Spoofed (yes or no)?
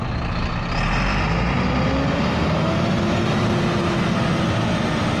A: no